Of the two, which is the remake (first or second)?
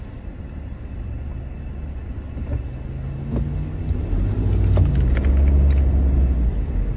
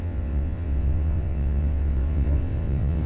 second